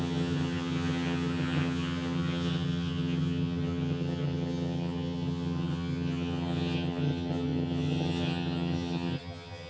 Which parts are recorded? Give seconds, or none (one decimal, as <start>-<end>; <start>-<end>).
none